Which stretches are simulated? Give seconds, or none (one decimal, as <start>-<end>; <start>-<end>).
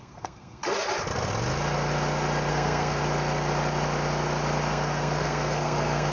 0.0-0.6; 2.5-3.0; 4.7-6.1